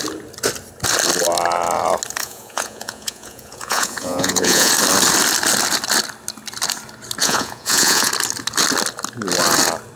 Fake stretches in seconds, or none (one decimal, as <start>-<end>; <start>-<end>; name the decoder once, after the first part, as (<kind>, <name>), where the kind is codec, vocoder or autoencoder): 2.2-4.7 (vocoder, Vocos); 7.2-8.1